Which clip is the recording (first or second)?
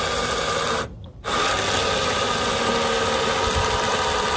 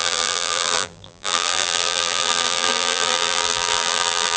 first